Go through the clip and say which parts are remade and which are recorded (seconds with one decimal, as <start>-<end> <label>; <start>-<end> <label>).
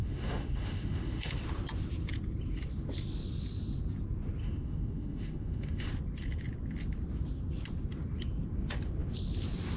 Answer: 0.0-1.4 remade; 1.4-4.4 recorded; 4.4-5.9 remade; 5.9-9.8 recorded